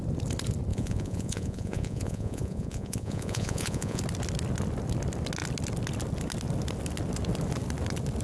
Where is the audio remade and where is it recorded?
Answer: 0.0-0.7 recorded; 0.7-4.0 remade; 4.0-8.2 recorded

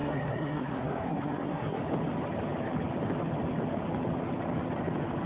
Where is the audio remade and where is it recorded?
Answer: 0.0-1.8 remade; 1.8-5.3 recorded

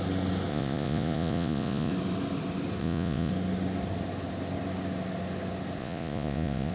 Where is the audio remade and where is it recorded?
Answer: 0.0-0.5 recorded; 0.5-1.9 remade; 1.9-2.8 recorded; 2.8-3.3 remade; 3.3-5.8 recorded; 5.8-6.7 remade

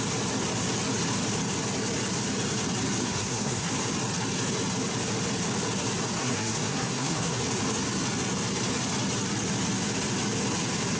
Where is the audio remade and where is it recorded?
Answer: 0.0-3.0 recorded; 3.0-3.7 remade; 3.7-6.2 recorded; 6.2-7.4 remade; 7.4-11.0 recorded

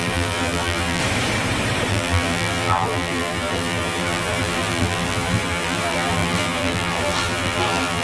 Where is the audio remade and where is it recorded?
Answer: 0.0-1.0 remade; 1.0-1.9 recorded; 1.9-8.0 remade